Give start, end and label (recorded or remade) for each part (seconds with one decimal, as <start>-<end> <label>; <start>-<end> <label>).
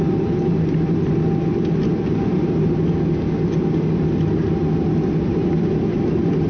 0.0-6.5 recorded